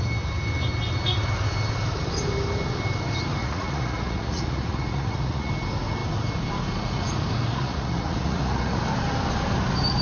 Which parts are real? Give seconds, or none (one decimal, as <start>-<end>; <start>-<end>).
0.0-3.4; 5.5-7.5; 8.8-10.0